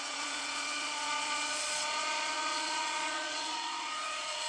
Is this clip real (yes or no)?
no